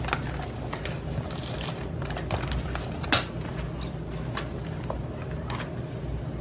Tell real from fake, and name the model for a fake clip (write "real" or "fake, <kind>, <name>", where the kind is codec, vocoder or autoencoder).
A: real